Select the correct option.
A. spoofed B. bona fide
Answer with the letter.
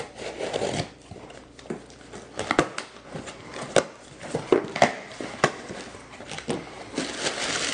B